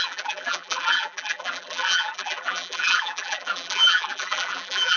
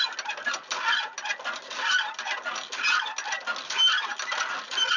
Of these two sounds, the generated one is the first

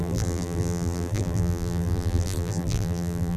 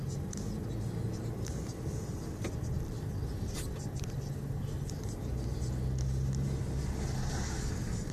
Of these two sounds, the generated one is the first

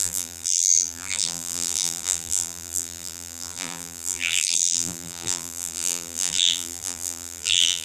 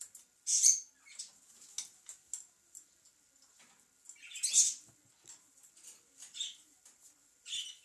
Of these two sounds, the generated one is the first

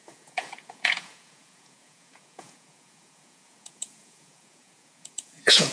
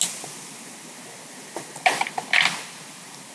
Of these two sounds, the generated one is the first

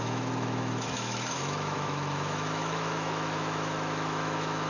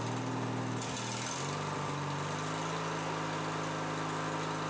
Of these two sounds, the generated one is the first